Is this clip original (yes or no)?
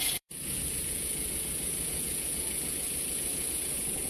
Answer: no